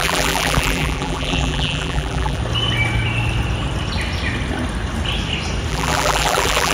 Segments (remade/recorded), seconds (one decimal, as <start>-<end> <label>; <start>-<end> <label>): 0.0-2.4 remade; 2.4-5.7 recorded; 5.7-6.7 remade